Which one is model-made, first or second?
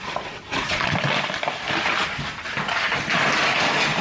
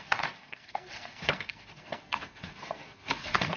second